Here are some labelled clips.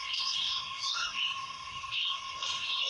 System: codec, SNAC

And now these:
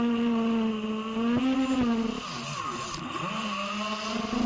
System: none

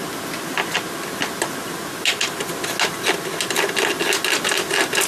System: none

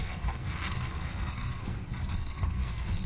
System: codec, SNAC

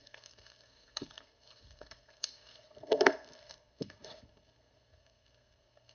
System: codec, SNAC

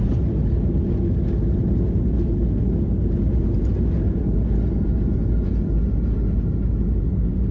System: none